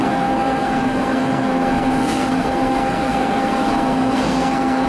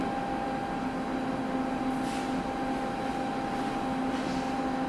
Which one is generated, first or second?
first